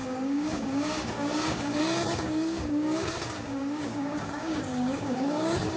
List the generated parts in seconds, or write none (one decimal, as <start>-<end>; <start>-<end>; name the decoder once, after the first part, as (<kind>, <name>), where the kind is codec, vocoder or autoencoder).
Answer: 0.0-5.8 (codec, DAC)